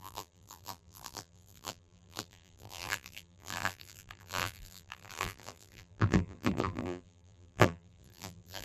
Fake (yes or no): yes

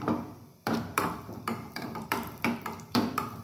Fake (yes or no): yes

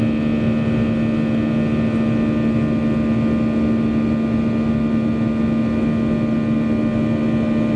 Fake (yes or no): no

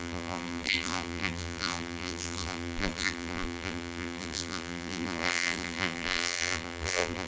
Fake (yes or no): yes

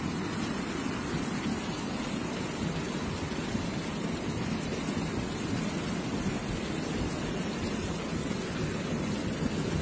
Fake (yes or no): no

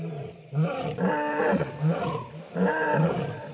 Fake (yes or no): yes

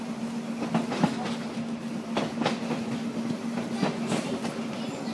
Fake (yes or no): no